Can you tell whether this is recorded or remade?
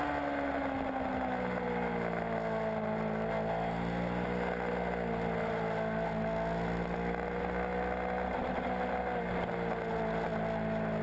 recorded